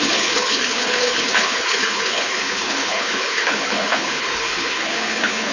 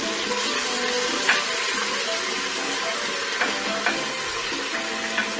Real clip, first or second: second